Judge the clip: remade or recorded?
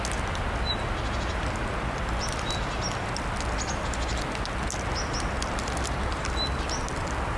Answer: recorded